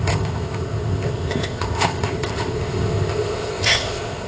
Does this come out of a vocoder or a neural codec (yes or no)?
yes